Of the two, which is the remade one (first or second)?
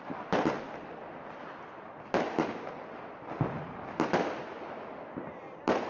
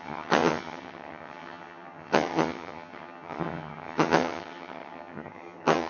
second